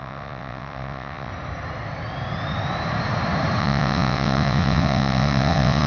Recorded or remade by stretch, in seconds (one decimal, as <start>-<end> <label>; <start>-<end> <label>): 0.0-1.3 remade; 1.3-3.6 recorded; 3.6-5.9 remade

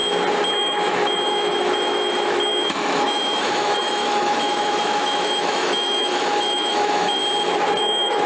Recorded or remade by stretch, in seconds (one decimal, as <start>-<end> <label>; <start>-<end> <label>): 0.0-0.5 recorded; 0.5-7.2 remade; 7.2-7.8 recorded; 7.8-8.3 remade

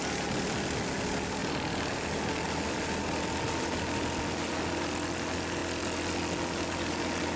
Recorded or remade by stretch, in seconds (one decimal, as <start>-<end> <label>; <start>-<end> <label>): 0.0-7.4 recorded

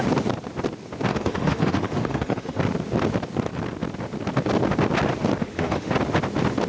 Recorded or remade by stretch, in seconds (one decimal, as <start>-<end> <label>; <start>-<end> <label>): 0.0-1.1 recorded; 1.1-2.6 remade; 2.6-5.4 recorded; 5.4-5.9 remade; 5.9-6.7 recorded

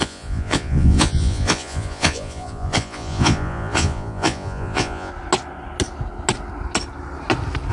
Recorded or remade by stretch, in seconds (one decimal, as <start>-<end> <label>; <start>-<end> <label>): 0.0-5.1 remade; 5.1-7.7 recorded

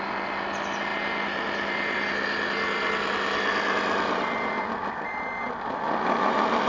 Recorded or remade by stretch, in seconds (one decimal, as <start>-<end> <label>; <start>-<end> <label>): 0.0-6.7 recorded